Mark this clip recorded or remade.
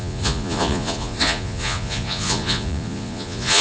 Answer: remade